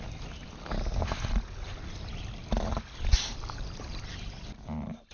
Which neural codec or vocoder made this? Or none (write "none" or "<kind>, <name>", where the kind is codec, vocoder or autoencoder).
none